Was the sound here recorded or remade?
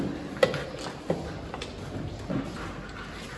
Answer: recorded